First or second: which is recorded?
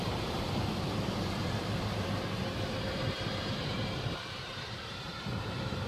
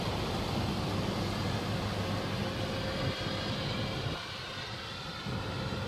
second